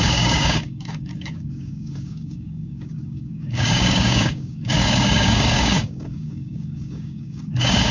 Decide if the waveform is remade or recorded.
remade